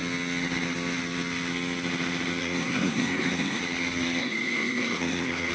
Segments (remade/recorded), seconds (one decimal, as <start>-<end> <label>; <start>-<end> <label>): 0.0-2.4 recorded; 2.4-3.6 remade; 3.6-4.2 recorded; 4.2-5.5 remade